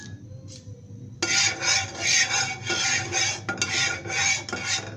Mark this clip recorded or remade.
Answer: recorded